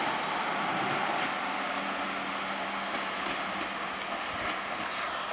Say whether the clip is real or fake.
real